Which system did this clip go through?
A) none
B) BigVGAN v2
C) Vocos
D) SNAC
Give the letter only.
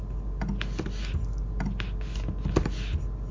A